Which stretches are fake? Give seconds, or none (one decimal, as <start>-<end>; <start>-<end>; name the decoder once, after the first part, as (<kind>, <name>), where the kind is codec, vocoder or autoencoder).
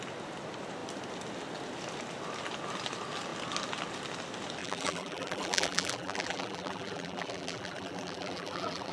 4.6-8.9 (vocoder, BigVGAN v2)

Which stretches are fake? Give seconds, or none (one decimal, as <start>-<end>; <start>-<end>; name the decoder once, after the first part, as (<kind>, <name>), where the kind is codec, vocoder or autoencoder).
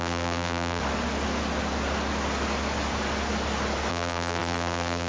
0.0-0.8 (vocoder, BigVGAN v2); 3.9-5.1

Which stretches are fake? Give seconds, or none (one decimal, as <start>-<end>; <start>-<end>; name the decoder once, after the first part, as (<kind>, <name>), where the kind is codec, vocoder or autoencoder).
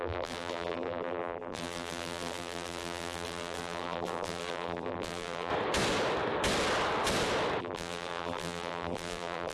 0.0-5.5 (vocoder, BigVGAN v2); 7.6-9.5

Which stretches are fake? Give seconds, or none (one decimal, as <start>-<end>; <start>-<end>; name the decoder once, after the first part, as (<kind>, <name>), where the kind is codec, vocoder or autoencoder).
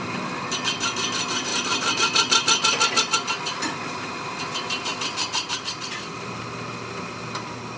1.5-3.6 (vocoder, BigVGAN v2); 4.9-6.4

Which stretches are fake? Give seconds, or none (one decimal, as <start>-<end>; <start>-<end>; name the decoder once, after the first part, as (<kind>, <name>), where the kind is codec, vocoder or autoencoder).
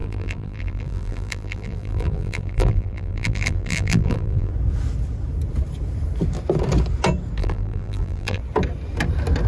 0.0-4.5 (vocoder, BigVGAN v2); 7.4-8.4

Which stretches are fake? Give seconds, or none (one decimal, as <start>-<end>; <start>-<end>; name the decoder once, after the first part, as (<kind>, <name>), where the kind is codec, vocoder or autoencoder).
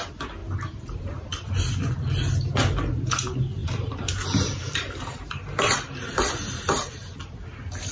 0.4-1.7 (vocoder, BigVGAN v2); 3.6-6.3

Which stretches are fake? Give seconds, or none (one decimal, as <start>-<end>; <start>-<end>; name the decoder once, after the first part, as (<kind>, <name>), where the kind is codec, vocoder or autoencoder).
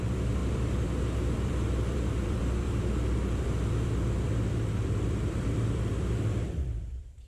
0.0-7.3 (vocoder, BigVGAN v2)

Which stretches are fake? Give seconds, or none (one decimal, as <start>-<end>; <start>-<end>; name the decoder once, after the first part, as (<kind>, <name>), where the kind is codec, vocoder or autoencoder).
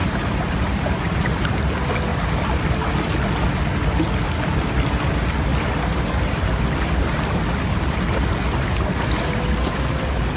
0.0-1.7 (vocoder, BigVGAN v2); 5.5-6.0